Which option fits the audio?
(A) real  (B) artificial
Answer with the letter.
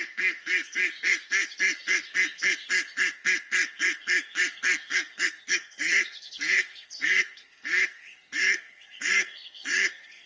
B